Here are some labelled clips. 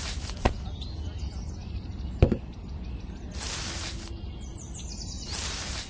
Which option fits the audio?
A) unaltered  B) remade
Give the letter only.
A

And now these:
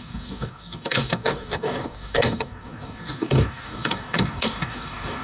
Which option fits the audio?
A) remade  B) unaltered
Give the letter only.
A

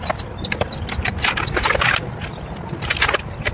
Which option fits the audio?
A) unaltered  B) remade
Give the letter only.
A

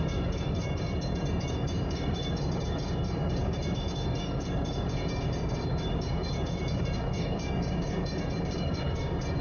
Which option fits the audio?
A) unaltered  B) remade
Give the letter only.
B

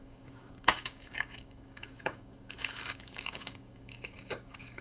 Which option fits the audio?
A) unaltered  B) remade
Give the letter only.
B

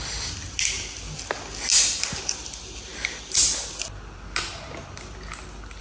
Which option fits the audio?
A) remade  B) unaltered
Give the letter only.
B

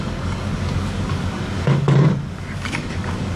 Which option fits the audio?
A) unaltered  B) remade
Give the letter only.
B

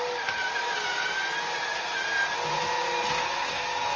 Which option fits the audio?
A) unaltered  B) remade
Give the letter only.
A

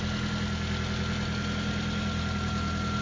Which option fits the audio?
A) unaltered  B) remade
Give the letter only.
A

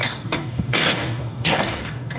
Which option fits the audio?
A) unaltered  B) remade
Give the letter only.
B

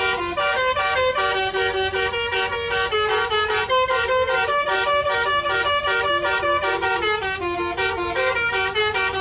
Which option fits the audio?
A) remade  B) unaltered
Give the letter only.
B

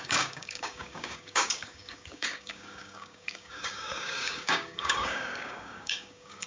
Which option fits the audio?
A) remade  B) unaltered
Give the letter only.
A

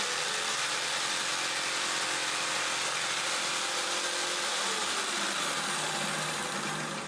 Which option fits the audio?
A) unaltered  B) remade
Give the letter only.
A